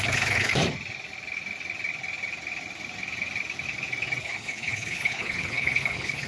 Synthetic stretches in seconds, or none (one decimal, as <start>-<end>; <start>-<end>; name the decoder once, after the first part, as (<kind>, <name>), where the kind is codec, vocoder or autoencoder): 0.0-0.5 (codec, HILCodec); 4.2-6.3